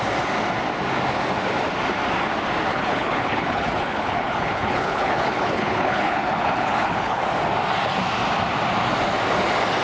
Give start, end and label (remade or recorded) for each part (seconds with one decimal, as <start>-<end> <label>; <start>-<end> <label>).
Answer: 0.0-2.7 recorded; 2.7-7.2 remade; 7.2-9.8 recorded